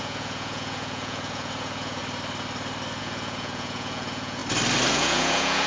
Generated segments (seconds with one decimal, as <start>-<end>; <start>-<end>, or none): 0.0-2.0; 3.0-4.4; 4.9-5.7

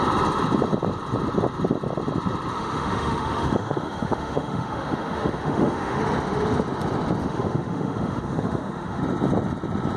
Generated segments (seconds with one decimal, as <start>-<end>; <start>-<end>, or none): 2.5-6.0; 7.2-9.0

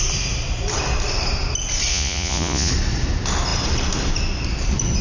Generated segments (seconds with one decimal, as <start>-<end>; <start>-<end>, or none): 1.9-2.7